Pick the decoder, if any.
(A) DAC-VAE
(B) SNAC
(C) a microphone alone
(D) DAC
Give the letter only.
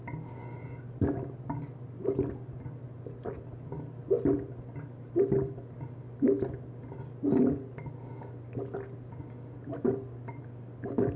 C